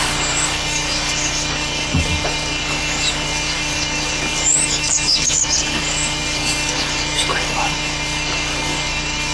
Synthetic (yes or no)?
yes